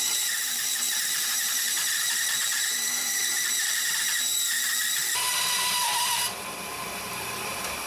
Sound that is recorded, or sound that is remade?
remade